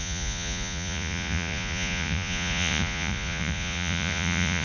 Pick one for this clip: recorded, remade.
remade